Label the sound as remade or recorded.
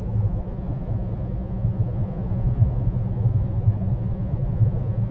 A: remade